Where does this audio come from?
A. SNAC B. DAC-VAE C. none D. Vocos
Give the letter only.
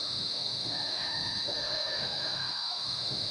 B